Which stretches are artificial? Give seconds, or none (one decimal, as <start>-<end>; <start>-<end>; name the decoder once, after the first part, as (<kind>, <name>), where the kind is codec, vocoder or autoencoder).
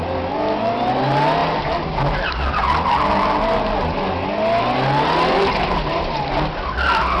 none